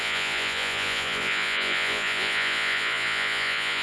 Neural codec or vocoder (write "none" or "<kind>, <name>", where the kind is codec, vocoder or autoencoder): vocoder, Vocos